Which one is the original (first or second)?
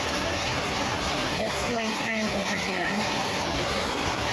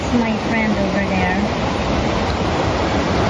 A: second